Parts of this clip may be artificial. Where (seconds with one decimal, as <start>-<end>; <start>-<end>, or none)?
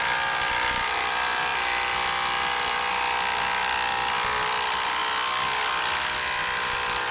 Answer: none